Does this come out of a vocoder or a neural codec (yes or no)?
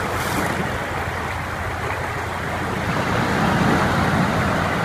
no